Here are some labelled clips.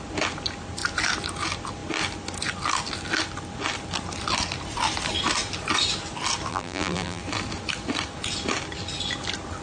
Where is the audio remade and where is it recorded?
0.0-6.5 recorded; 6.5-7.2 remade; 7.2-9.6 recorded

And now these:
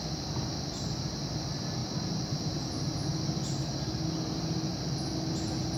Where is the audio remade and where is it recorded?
0.0-1.8 recorded; 1.8-2.6 remade; 2.6-5.8 recorded

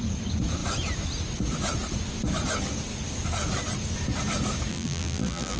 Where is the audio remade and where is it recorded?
0.0-4.7 recorded; 4.7-5.6 remade